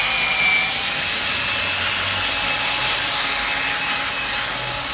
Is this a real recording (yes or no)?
yes